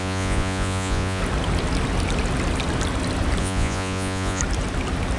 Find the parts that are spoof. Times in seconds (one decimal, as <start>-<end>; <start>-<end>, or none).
0.0-1.2; 3.4-4.4